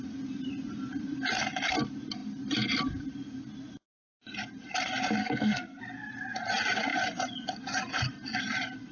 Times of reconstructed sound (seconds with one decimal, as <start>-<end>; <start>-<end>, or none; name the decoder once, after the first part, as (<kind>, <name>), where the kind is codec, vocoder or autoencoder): 5.2-5.8 (codec, SNAC)